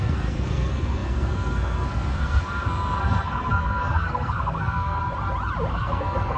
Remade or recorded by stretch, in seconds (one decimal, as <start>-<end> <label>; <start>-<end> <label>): 0.0-5.0 remade; 5.0-5.7 recorded; 5.7-6.4 remade